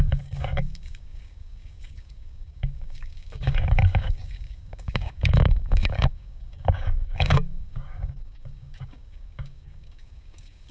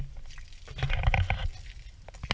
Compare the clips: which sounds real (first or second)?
second